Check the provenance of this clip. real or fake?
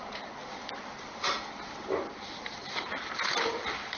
real